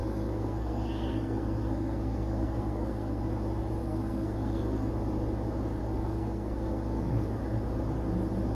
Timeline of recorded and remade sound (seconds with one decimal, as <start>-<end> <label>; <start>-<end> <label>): 0.0-3.2 remade; 3.2-3.8 recorded; 3.8-4.9 remade; 4.9-5.8 recorded; 5.8-7.4 remade; 7.4-8.5 recorded